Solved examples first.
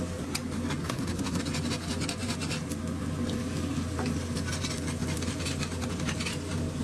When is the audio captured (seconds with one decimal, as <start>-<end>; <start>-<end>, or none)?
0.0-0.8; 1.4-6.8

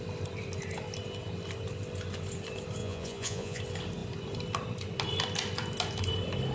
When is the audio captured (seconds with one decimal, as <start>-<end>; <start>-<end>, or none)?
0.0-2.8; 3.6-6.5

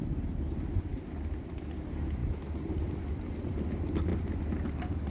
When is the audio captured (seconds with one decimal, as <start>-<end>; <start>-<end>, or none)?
0.0-5.1

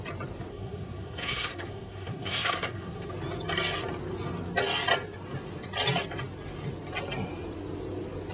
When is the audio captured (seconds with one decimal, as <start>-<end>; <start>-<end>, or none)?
0.0-0.5; 3.1-8.3

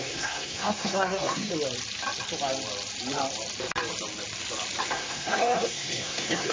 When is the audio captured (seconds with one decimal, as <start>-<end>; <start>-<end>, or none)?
1.5-4.9